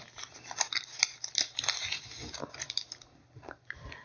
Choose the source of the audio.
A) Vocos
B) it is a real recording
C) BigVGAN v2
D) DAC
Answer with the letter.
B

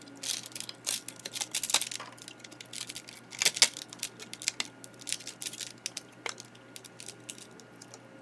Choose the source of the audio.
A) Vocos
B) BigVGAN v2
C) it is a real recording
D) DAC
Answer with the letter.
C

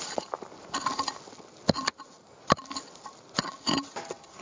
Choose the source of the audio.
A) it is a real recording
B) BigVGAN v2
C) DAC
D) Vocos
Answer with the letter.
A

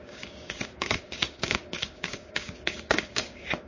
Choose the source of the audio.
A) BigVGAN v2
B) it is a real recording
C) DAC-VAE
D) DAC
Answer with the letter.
D